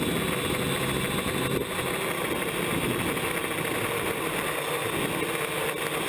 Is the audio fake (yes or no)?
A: no